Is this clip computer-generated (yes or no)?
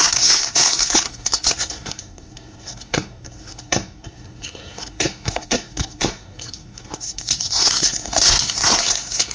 yes